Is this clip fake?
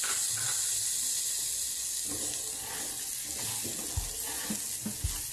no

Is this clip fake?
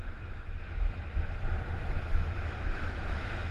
yes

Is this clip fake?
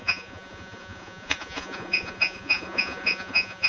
yes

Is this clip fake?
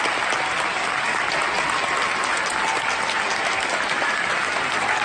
no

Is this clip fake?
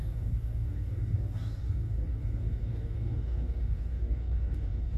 yes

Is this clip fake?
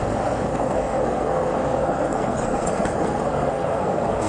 yes